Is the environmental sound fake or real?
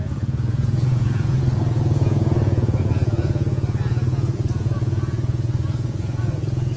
fake